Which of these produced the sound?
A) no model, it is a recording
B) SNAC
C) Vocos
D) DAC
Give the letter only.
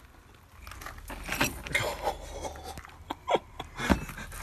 A